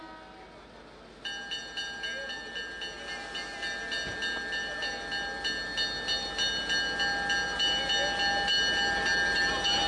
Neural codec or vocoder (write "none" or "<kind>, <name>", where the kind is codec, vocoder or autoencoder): none